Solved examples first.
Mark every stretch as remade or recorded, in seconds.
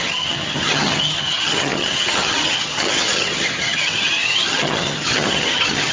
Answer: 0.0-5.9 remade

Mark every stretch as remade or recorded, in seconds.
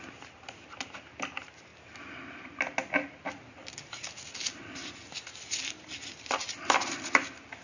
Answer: 0.0-7.6 recorded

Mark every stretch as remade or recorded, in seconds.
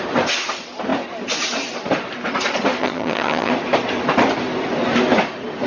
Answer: 0.0-2.8 recorded; 2.8-3.5 remade; 3.5-5.7 recorded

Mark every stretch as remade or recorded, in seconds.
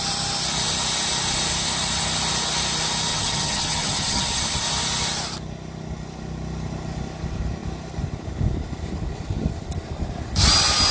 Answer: 0.0-3.1 recorded; 3.1-4.4 remade; 4.4-10.9 recorded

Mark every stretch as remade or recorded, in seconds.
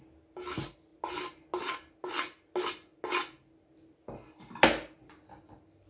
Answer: 0.0-5.9 recorded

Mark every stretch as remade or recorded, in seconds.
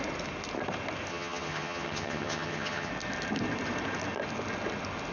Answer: 0.0-1.1 recorded; 1.1-2.9 remade; 2.9-5.1 recorded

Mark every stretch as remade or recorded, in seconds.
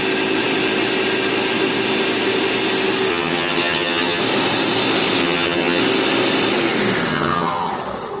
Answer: 0.0-3.1 recorded; 3.1-4.2 remade; 4.2-5.2 recorded; 5.2-5.8 remade; 5.8-7.1 recorded; 7.1-7.7 remade; 7.7-8.2 recorded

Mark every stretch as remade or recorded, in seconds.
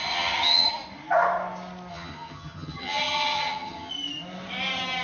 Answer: 0.0-0.7 remade; 0.7-1.9 recorded; 1.9-3.9 remade; 3.9-5.0 recorded